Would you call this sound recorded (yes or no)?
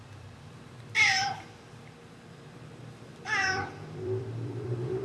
no